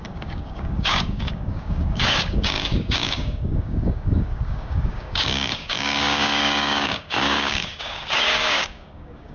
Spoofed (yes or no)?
yes